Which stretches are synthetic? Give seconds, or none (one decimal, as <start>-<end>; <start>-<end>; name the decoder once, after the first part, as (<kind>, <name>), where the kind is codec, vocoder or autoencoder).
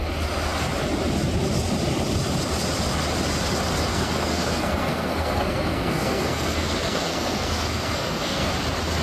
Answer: 3.9-8.5 (codec, SNAC)